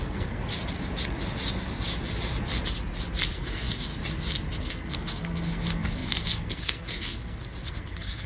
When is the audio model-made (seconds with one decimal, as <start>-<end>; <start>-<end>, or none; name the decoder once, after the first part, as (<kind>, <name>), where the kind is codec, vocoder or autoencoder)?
0.0-0.5 (codec, SNAC); 3.3-3.9; 4.6-8.3